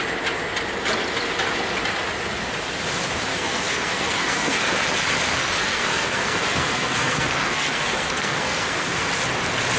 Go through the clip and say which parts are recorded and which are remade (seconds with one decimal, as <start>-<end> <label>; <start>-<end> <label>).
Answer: 0.0-3.3 recorded; 3.3-4.8 remade; 4.8-5.4 recorded; 5.4-9.1 remade; 9.1-9.8 recorded